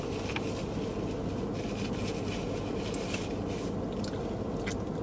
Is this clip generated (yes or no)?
no